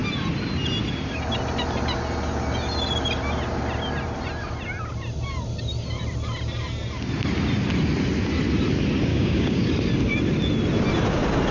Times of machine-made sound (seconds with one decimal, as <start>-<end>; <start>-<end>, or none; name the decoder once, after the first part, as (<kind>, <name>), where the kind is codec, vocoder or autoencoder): 9.1-9.7 (codec, DAC)